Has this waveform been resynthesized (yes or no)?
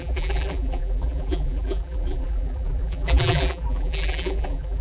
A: yes